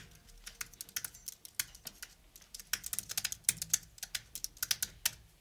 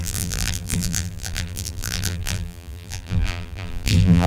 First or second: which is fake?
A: second